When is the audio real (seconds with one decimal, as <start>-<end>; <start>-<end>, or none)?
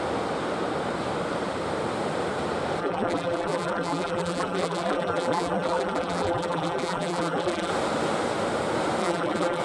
0.0-2.8; 7.7-9.0